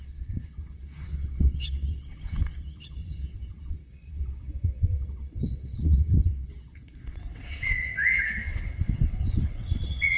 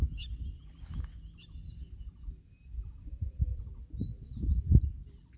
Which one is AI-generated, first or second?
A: first